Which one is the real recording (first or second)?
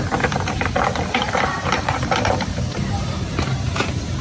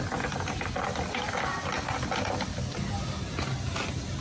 second